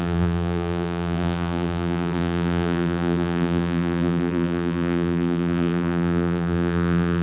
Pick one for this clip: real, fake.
fake